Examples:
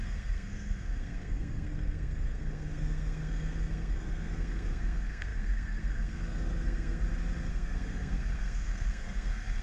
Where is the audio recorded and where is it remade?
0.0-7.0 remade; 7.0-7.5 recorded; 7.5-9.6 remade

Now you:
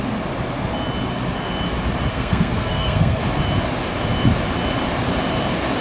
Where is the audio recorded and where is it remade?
0.0-2.1 recorded; 2.1-3.2 remade; 3.2-5.8 recorded